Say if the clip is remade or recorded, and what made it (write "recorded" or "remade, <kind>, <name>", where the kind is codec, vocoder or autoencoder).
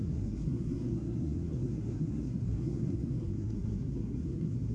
remade, codec, SNAC